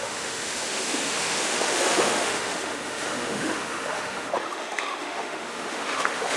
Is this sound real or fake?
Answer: fake